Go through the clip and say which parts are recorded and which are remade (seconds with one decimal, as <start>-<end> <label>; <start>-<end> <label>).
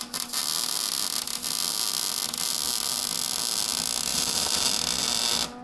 0.0-4.1 recorded; 4.1-4.7 remade; 4.7-5.6 recorded